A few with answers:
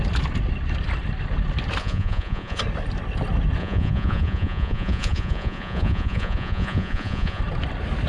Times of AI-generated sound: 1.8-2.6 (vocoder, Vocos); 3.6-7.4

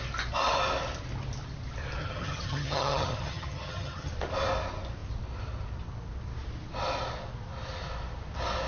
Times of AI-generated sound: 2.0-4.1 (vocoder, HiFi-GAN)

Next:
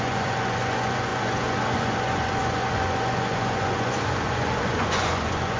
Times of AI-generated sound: 0.0-5.6 (vocoder, Vocos)

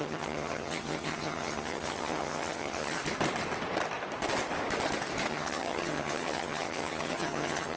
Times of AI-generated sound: 0.0-3.0 (vocoder, HiFi-GAN); 5.3-7.8

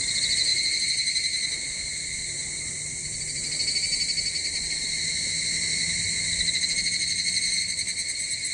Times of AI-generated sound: none

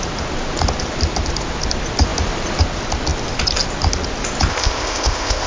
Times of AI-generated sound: 4.5-5.5 (codec, ZipCodec)